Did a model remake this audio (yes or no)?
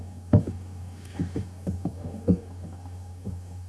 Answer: yes